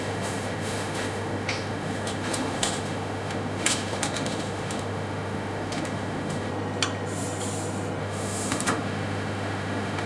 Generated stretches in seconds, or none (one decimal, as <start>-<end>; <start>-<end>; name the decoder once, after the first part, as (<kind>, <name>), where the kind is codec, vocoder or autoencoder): 0.0-6.5 (autoencoder, DAC-VAE); 8.0-10.1